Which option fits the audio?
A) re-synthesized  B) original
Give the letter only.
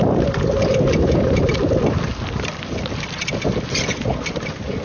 B